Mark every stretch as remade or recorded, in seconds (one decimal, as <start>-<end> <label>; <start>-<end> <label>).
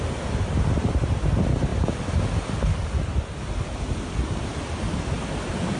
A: 0.0-5.8 recorded